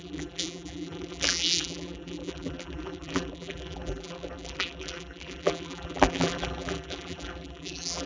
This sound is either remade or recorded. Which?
remade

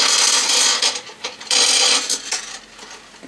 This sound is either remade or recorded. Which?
recorded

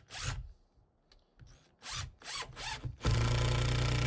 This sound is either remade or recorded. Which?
recorded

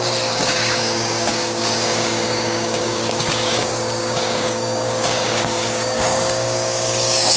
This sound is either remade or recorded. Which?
remade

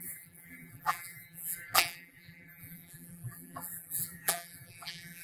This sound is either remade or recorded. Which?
remade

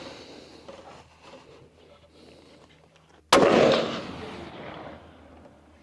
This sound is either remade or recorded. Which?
recorded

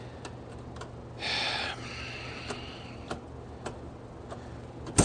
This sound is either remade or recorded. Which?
recorded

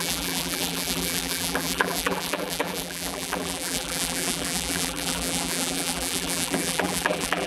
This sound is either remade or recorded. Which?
remade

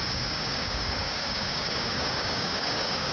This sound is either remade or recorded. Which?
remade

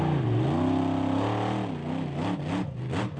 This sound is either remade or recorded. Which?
recorded